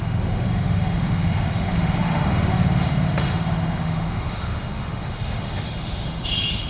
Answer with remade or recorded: remade